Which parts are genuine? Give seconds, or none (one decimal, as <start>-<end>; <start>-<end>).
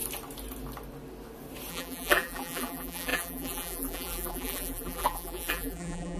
0.0-1.7